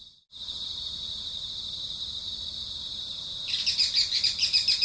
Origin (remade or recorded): recorded